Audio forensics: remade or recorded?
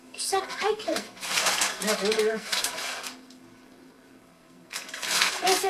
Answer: remade